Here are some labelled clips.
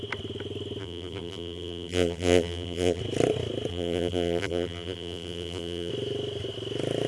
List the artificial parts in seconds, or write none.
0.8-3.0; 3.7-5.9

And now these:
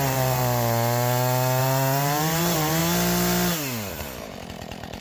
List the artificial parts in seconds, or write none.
0.0-0.4; 1.6-2.8; 3.9-5.0